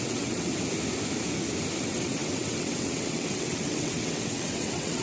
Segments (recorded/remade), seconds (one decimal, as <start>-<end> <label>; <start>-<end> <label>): 0.0-0.5 remade; 0.5-1.8 recorded; 1.8-5.0 remade